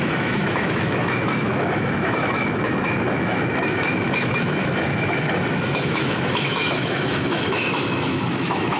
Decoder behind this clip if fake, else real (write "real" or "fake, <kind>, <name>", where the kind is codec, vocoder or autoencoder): fake, autoencoder, DAC-VAE